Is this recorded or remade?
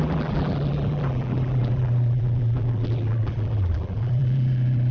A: remade